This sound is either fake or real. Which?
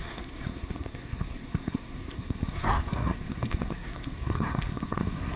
fake